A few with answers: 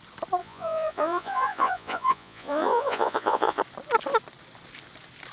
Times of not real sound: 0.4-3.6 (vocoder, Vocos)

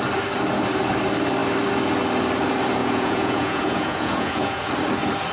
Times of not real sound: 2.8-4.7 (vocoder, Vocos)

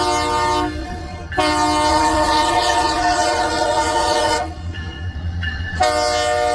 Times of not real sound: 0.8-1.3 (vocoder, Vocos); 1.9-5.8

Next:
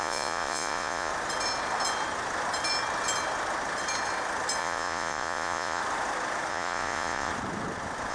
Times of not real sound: 0.0-1.1 (vocoder, Vocos); 4.6-5.8; 6.5-7.3

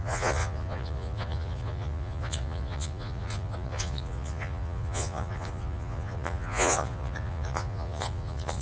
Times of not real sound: 0.0-8.6 (vocoder, Vocos)

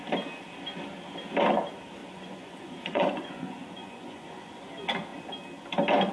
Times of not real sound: 2.0-4.6 (vocoder, Vocos)

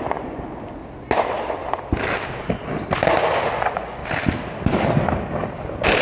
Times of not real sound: 0.0-0.8 (vocoder, Vocos); 3.5-4.0

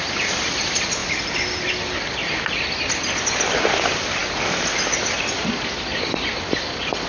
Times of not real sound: none